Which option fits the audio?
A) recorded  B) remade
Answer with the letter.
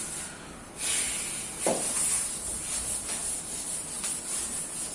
A